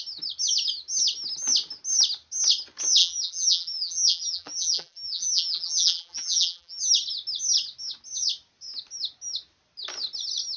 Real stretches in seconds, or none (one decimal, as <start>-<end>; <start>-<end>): 0.0-3.0; 6.8-10.6